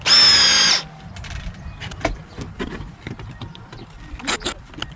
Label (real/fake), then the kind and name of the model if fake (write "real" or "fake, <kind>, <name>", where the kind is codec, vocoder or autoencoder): real